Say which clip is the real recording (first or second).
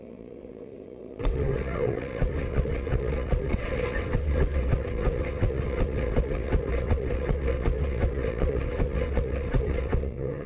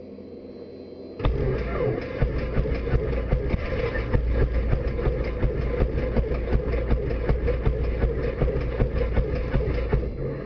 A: second